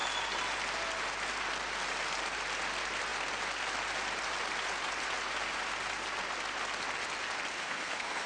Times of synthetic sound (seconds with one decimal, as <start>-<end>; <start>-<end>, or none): 7.5-8.3